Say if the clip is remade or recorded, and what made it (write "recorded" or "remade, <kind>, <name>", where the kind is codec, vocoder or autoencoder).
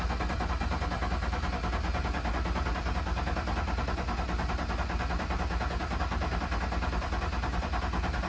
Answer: recorded